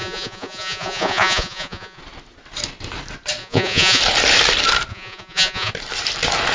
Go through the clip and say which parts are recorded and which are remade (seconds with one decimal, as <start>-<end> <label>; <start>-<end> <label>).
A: 0.0-2.0 remade; 2.0-3.4 recorded; 3.4-4.0 remade; 4.0-4.9 recorded; 4.9-5.7 remade; 5.7-6.5 recorded